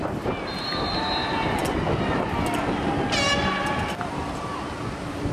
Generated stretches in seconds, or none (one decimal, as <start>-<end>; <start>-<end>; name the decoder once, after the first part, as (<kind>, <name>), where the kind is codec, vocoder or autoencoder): none

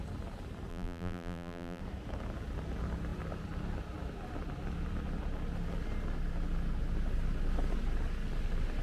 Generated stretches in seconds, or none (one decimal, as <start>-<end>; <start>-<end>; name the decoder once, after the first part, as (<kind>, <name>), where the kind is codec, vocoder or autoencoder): 0.7-1.8 (vocoder, BigVGAN v2)

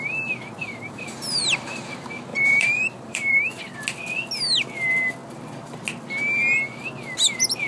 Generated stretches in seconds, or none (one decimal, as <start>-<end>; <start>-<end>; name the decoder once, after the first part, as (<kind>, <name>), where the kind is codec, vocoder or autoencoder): 0.6-1.4 (vocoder, BigVGAN v2); 2.3-3.6

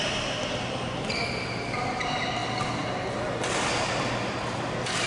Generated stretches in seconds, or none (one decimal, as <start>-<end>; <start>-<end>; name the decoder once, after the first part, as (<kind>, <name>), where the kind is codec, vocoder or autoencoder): 0.0-1.2 (vocoder, BigVGAN v2); 1.8-2.4; 4.6-5.1

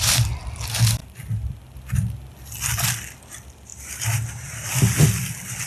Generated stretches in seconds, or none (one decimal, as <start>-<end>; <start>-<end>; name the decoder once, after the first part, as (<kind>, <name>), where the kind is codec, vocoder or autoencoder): 3.7-4.7 (vocoder, BigVGAN v2)